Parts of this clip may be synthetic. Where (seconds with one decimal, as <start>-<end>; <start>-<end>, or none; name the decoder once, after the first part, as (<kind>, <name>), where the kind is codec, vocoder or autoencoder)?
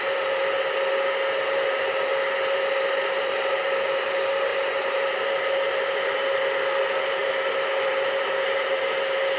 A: 2.1-3.5 (vocoder, BigVGAN v2); 7.2-7.9